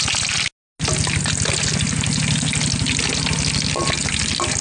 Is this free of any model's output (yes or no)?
yes